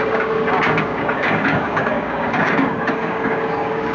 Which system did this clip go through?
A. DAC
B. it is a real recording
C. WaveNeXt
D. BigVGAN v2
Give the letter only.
A